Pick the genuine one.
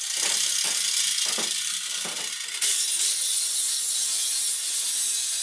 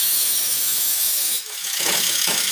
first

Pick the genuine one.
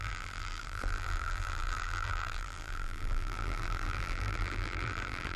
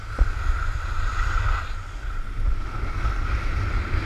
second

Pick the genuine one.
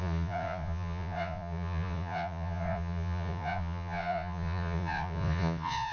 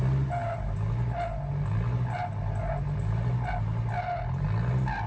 second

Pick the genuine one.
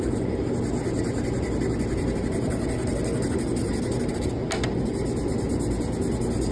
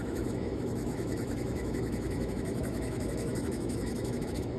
first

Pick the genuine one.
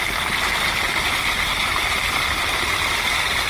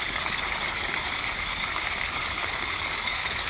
first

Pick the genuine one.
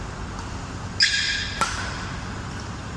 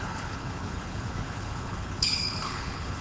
first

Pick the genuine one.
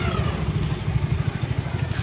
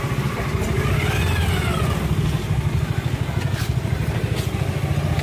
second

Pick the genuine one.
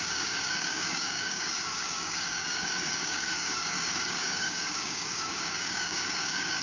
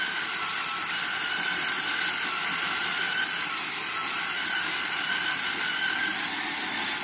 second